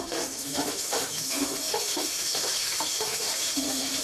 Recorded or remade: remade